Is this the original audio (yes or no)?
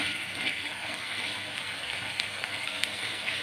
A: no